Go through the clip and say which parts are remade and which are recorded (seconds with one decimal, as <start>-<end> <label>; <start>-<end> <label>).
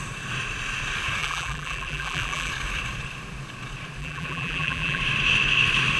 0.0-1.2 recorded; 1.2-2.5 remade; 2.5-4.0 recorded; 4.0-5.0 remade; 5.0-6.0 recorded